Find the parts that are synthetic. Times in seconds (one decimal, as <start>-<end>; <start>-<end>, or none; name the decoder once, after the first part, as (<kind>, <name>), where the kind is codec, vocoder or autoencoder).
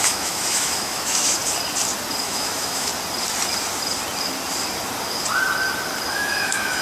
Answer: 0.0-1.4 (autoencoder, DAC-VAE); 2.2-2.9; 6.1-6.8